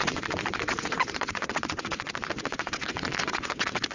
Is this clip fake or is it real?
fake